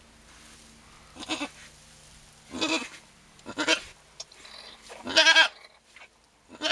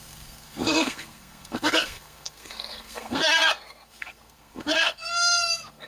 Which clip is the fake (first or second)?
second